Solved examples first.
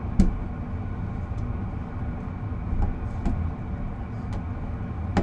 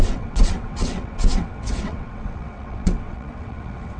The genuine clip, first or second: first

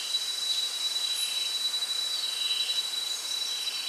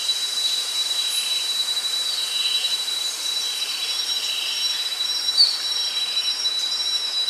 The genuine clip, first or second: first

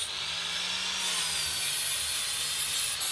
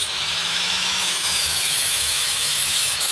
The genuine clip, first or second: first